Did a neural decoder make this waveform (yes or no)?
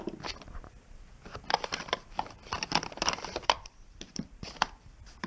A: yes